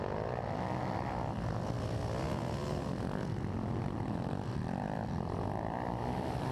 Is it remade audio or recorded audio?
recorded